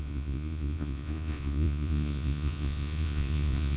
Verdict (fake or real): fake